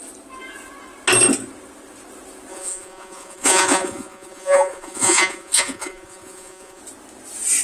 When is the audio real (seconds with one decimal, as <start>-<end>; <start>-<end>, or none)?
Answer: 0.0-2.5; 6.8-7.6